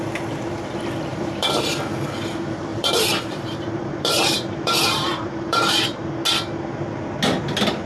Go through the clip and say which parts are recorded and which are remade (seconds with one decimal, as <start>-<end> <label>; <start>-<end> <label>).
0.0-1.1 recorded; 1.1-1.7 remade; 1.7-2.7 recorded; 2.7-6.0 remade; 6.0-7.9 recorded